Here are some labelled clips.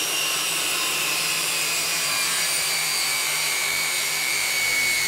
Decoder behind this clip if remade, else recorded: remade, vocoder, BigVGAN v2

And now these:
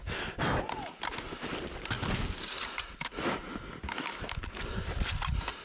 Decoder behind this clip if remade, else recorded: recorded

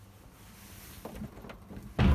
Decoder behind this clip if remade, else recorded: recorded